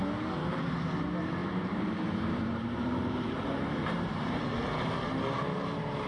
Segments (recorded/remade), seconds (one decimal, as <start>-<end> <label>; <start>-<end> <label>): 0.0-1.4 recorded; 1.4-4.4 remade; 4.4-6.1 recorded